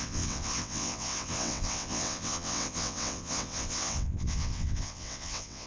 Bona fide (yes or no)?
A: no